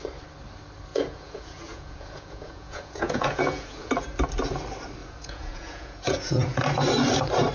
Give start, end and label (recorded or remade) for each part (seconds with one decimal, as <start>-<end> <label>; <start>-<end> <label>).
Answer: 0.0-0.9 recorded; 0.9-3.9 remade; 3.9-5.0 recorded; 5.0-6.6 remade; 6.6-7.5 recorded